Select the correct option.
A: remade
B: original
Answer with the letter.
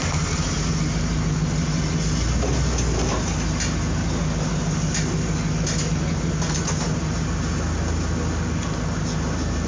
B